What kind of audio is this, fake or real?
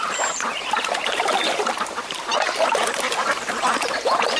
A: fake